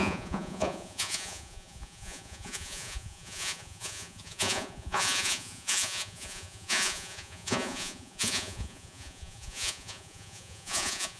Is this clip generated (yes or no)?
yes